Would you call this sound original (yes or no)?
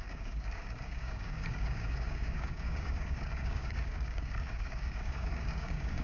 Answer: no